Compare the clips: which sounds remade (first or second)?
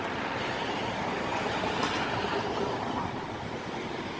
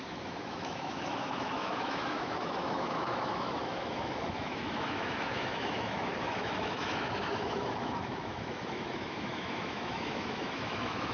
second